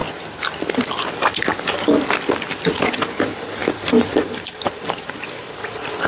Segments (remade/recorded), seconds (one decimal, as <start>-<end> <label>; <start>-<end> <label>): 0.0-3.6 recorded; 3.6-6.1 remade